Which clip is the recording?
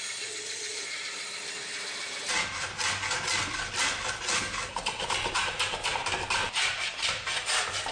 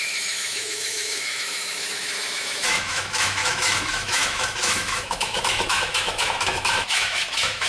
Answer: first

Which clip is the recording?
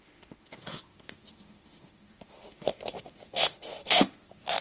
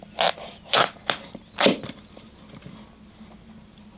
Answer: second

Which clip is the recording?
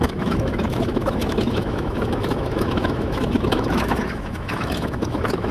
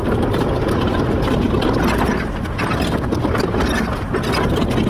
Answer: second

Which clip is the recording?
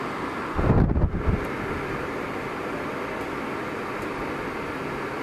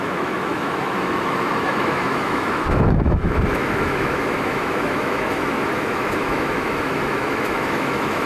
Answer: first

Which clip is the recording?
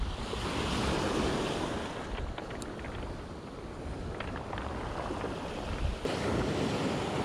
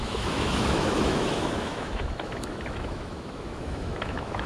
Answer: first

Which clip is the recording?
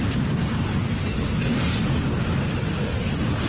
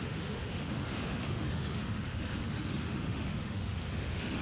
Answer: first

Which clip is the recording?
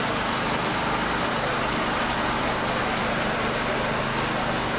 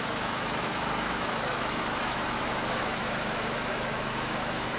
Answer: first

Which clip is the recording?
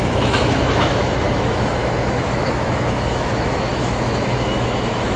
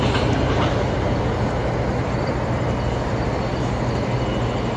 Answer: second